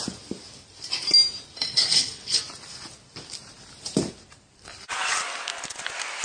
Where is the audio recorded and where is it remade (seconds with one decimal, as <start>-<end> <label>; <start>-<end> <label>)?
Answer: 0.0-1.7 recorded; 1.7-2.4 remade; 2.4-6.2 recorded